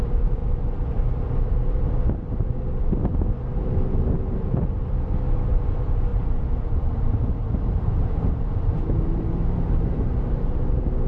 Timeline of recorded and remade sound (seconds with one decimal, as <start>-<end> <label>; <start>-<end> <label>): 0.0-0.4 remade; 0.4-5.5 recorded; 5.5-11.1 remade